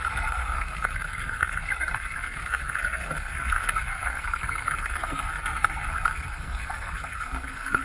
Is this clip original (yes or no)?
no